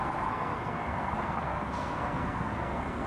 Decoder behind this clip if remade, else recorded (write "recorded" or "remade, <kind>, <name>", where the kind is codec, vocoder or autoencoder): remade, codec, SNAC